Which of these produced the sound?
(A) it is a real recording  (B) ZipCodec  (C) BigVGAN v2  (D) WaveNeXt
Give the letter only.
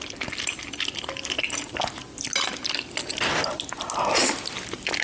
A